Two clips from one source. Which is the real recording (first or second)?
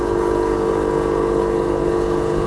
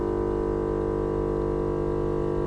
second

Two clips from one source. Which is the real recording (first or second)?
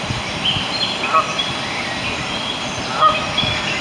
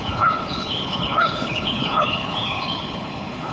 first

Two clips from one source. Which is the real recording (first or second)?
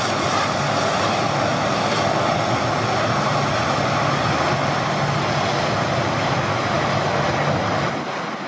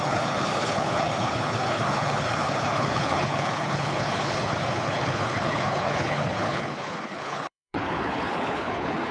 first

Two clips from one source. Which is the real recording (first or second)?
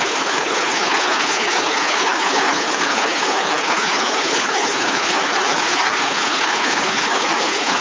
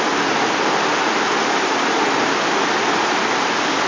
second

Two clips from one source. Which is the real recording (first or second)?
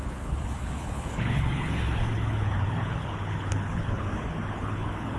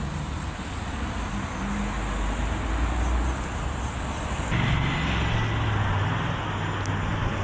second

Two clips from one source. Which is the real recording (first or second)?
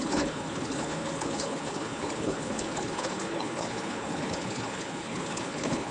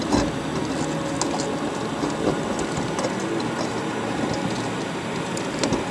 second